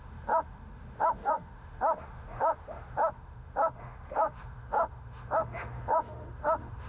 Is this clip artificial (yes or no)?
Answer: yes